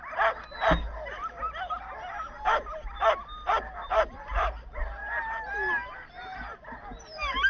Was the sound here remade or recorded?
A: recorded